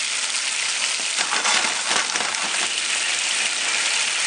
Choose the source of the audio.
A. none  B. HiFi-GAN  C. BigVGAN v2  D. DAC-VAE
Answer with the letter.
A